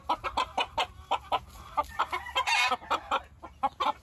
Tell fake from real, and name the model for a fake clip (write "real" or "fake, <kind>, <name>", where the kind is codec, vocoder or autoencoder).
real